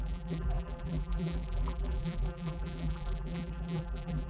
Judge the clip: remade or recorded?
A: remade